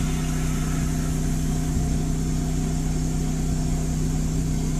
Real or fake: real